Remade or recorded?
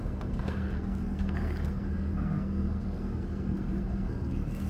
remade